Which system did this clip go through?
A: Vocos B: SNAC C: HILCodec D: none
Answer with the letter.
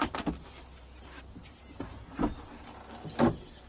D